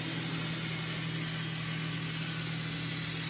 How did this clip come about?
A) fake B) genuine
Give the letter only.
B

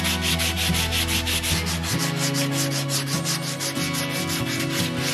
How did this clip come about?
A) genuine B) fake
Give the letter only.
A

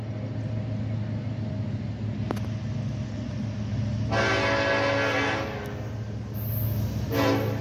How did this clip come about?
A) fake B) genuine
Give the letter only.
B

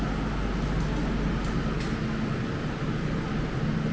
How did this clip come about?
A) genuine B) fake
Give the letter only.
A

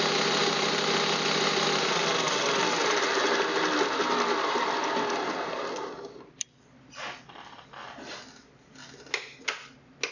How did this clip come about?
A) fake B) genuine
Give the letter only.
B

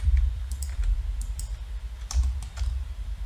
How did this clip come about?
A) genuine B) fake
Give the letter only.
B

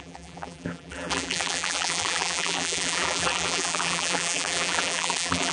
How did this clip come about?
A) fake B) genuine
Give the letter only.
A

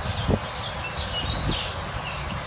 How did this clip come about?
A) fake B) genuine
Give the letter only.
B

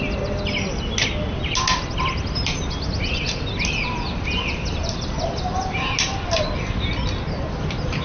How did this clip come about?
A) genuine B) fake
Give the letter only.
A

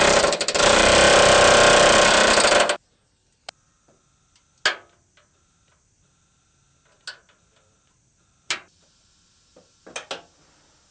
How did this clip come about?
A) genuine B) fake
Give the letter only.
A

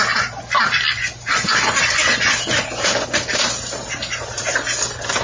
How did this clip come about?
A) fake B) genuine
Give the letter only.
B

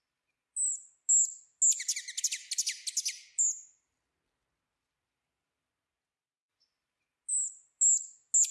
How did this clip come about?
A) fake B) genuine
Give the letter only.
B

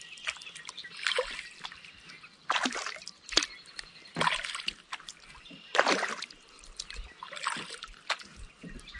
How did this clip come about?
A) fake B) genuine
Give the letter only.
A